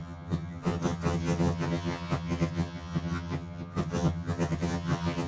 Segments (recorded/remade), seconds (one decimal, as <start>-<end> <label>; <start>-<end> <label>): 0.0-5.3 remade